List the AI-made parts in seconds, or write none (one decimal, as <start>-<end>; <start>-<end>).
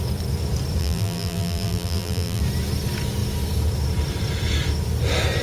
0.8-2.4